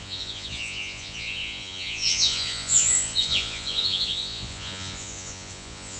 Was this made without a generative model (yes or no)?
no